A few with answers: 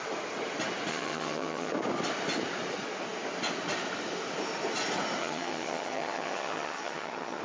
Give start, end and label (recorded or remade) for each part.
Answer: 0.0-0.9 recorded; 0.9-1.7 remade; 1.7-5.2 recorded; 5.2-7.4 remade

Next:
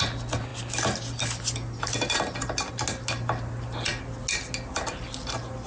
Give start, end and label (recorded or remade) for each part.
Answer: 0.0-5.7 recorded